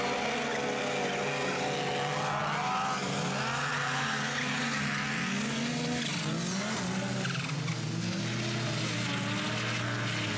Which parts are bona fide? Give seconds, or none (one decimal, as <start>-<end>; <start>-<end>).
0.0-10.4